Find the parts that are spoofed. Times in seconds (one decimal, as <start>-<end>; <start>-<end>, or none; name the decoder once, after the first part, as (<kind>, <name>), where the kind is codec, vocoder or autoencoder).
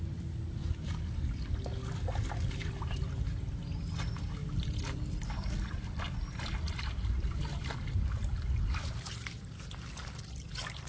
none